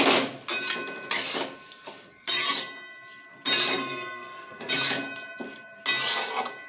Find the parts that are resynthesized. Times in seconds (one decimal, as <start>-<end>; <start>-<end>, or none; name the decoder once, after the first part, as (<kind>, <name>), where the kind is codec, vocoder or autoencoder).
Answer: 3.7-4.7 (codec, SNAC)